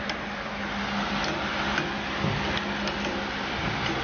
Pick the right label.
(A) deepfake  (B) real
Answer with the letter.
B